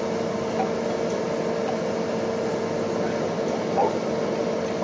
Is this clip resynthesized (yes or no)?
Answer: no